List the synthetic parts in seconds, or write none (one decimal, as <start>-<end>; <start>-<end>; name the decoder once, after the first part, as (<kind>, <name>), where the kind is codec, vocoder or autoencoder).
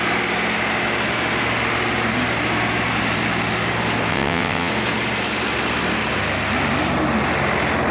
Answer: 4.1-4.7 (vocoder, WaveNeXt)